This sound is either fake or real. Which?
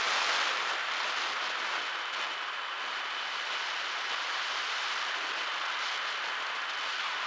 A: real